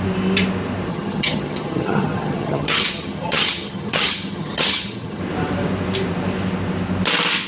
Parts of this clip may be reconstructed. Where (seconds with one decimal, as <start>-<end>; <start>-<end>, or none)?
0.9-5.2